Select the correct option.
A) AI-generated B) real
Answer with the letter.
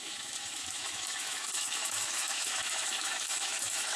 A